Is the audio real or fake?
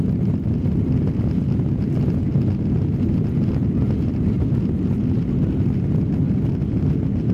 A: real